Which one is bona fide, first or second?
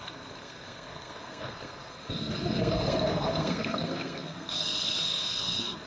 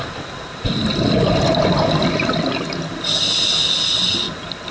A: second